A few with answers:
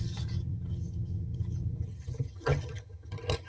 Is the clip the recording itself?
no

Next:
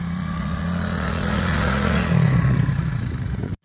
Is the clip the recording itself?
no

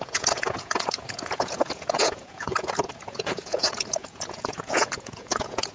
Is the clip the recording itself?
no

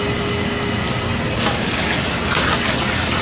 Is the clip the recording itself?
yes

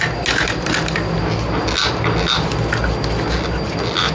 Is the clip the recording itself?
yes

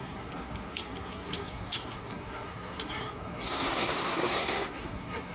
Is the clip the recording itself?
no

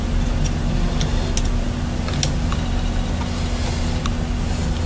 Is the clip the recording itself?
yes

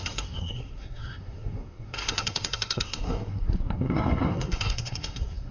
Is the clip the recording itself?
no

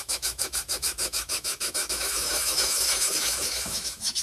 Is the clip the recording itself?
no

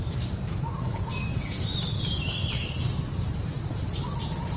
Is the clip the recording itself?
no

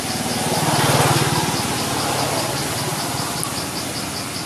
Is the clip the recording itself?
yes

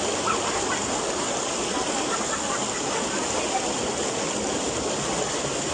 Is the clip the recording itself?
yes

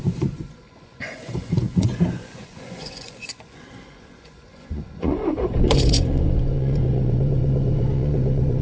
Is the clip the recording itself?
no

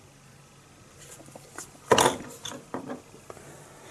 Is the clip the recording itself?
yes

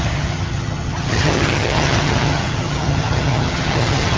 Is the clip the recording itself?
no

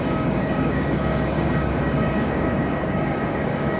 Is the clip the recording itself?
no